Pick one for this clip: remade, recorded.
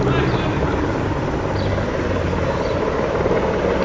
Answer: recorded